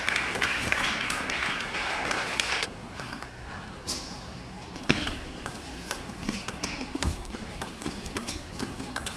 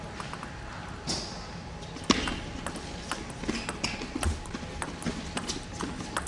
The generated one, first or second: first